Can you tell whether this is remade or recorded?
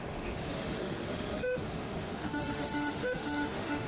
remade